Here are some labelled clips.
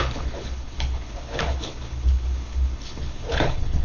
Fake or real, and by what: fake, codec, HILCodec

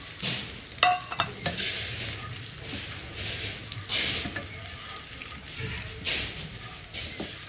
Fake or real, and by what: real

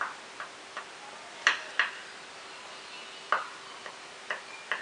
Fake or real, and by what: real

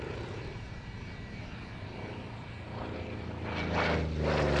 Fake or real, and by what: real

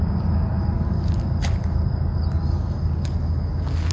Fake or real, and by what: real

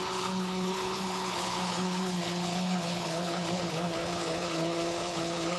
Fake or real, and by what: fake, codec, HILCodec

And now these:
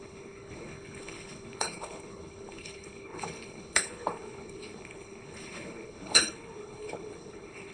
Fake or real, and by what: fake, codec, HILCodec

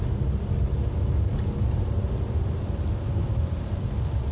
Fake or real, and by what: real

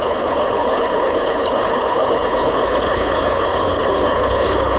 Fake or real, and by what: fake, codec, HILCodec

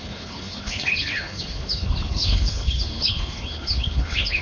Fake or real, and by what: fake, codec, HILCodec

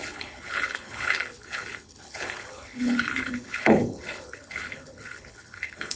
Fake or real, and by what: fake, codec, HILCodec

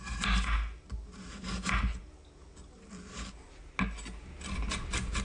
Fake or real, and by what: real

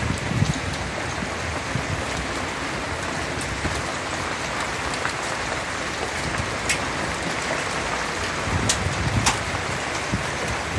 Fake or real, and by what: real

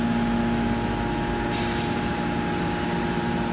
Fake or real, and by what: real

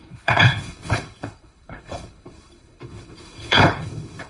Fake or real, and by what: fake, codec, HILCodec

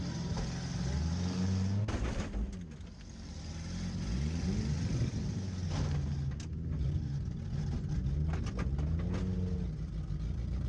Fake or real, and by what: real